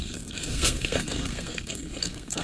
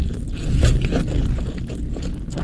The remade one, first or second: first